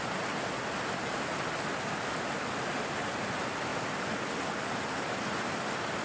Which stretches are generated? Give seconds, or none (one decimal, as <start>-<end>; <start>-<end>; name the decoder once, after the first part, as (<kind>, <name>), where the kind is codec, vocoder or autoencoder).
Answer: 3.7-4.7 (vocoder, BigVGAN v2)